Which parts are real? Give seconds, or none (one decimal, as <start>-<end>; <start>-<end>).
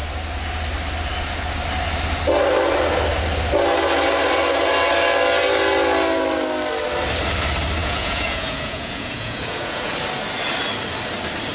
0.0-7.8; 9.9-11.5